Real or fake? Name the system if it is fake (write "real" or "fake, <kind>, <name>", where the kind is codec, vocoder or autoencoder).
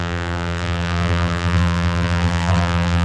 fake, vocoder, BigVGAN v2